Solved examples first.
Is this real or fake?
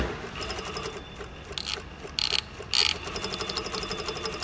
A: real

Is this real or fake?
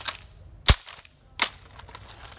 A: real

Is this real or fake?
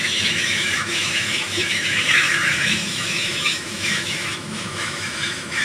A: fake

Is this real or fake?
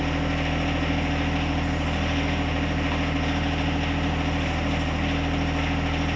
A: real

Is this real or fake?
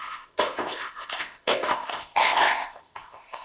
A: fake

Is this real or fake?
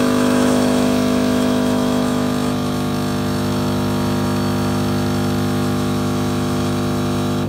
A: fake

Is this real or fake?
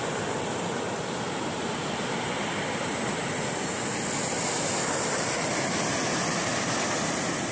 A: real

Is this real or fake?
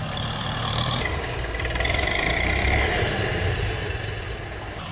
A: fake